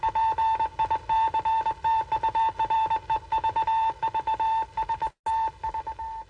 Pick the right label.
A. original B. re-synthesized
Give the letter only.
A